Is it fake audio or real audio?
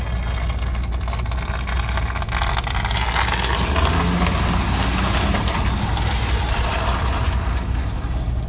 real